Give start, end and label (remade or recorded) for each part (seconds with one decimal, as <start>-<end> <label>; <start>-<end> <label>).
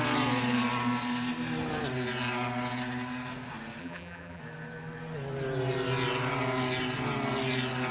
0.0-3.8 recorded; 3.8-4.4 remade; 4.4-7.9 recorded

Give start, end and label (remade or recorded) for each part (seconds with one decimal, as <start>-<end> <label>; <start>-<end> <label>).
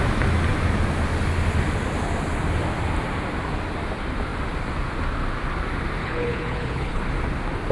0.0-6.0 recorded; 6.0-7.0 remade; 7.0-7.7 recorded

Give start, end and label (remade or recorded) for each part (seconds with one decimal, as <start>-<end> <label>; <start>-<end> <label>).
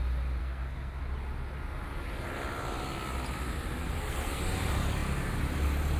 0.0-0.4 recorded; 0.4-1.0 remade; 1.0-3.8 recorded; 3.8-4.4 remade; 4.4-6.0 recorded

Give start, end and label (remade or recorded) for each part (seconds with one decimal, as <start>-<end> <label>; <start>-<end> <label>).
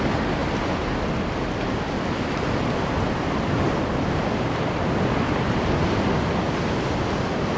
0.0-7.6 recorded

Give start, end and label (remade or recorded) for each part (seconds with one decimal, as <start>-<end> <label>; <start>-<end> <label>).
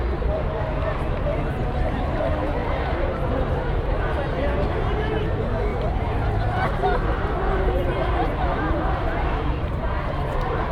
0.0-0.8 recorded; 0.8-1.4 remade; 1.4-2.6 recorded; 2.6-3.3 remade; 3.3-5.7 recorded; 5.7-10.1 remade; 10.1-10.7 recorded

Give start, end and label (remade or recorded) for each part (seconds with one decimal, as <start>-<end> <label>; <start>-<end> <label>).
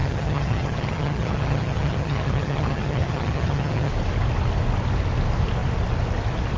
0.0-3.9 remade; 3.9-6.6 recorded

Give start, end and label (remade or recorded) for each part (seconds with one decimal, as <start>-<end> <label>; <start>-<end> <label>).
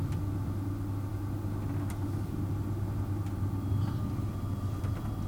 0.0-5.3 recorded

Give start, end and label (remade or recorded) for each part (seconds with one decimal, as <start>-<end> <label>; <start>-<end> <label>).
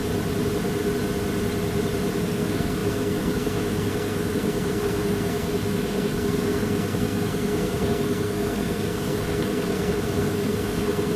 0.0-2.2 recorded; 2.2-11.2 remade